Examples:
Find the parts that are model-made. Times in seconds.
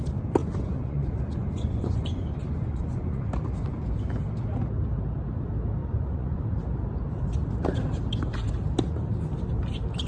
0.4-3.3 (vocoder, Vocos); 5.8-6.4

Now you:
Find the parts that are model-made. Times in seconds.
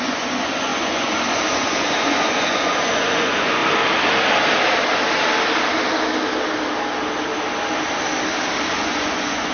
0.0-3.6 (vocoder, Vocos); 8.7-9.5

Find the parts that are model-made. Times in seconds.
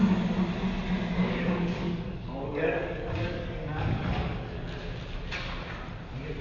1.2-4.7 (codec, DAC)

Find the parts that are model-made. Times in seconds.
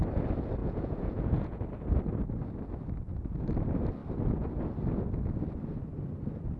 0.6-1.6 (vocoder, Vocos)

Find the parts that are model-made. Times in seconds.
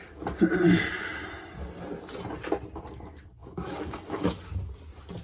3.4-4.4 (autoencoder, DAC-VAE)